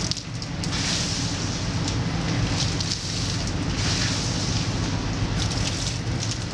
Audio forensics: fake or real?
real